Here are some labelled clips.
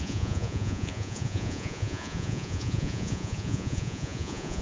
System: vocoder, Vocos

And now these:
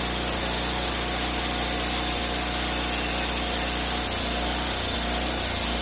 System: none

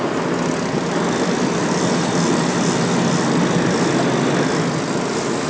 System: none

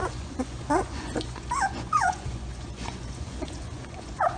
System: vocoder, Vocos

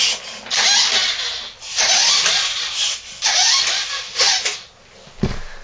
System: none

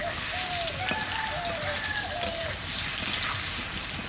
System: none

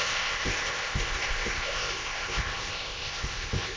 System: codec, ZipCodec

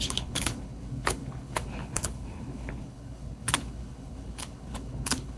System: codec, HILCodec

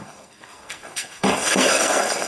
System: codec, SNAC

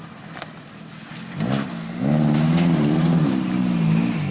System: none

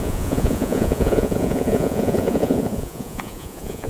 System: vocoder, Vocos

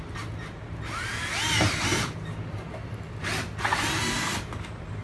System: none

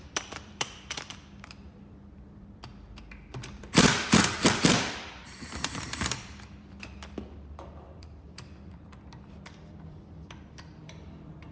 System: vocoder, BigVGAN v2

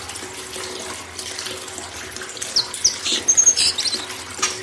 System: none